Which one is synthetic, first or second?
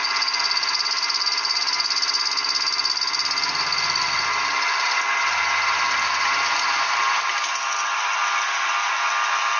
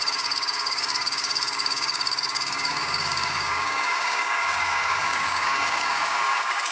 second